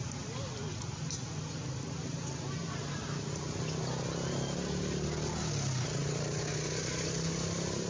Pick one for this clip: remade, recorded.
recorded